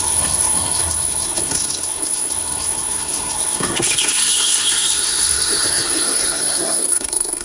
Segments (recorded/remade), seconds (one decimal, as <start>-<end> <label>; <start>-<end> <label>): 0.0-7.4 remade